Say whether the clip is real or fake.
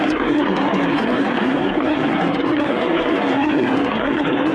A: fake